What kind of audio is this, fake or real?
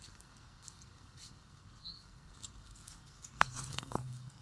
fake